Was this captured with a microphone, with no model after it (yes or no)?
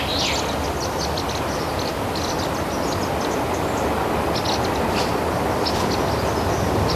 yes